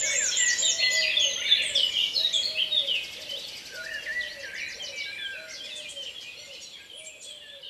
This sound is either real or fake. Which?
real